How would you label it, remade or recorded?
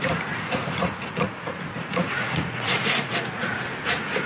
remade